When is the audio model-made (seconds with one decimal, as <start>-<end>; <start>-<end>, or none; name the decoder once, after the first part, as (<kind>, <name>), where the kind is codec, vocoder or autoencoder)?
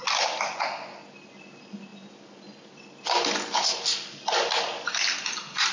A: none